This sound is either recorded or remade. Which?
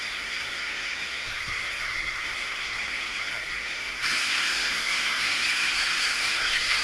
remade